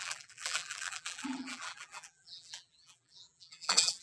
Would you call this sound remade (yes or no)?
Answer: yes